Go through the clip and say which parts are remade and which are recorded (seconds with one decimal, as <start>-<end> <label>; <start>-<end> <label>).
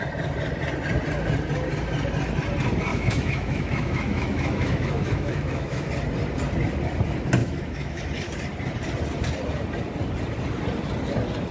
0.0-2.9 recorded; 2.9-5.9 remade; 5.9-7.4 recorded; 7.4-8.0 remade; 8.0-11.5 recorded